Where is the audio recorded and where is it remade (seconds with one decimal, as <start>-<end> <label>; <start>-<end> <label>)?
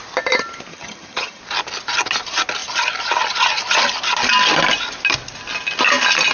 0.0-0.7 recorded; 0.7-1.4 remade; 1.4-6.3 recorded